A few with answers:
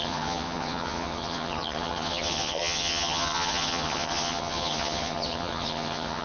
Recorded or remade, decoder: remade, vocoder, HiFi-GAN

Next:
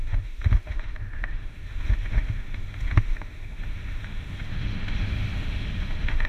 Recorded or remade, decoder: remade, autoencoder, DAC-VAE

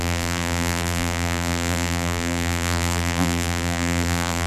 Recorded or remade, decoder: remade, vocoder, BigVGAN v2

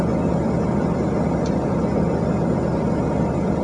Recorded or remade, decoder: recorded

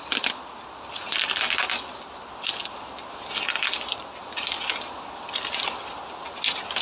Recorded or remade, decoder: recorded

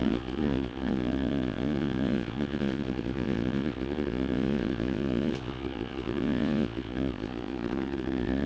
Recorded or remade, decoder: remade, vocoder, Vocos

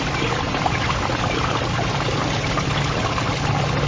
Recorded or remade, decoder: recorded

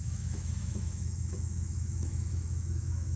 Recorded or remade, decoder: remade, autoencoder, DAC-VAE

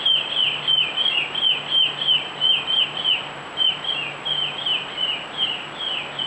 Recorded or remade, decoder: recorded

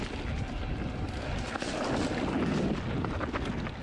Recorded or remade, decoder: recorded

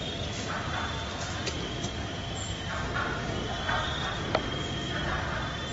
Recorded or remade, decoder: remade, vocoder, BigVGAN v2